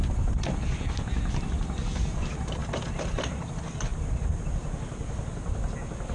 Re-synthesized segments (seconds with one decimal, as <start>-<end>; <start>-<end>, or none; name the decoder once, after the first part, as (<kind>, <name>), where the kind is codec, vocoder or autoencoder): 2.6-3.5 (vocoder, BigVGAN v2)